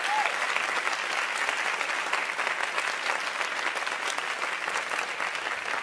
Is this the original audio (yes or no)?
yes